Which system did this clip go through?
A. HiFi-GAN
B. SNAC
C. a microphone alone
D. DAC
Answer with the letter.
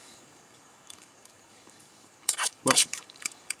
D